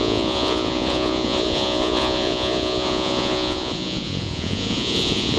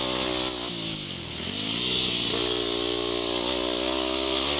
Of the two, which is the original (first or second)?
second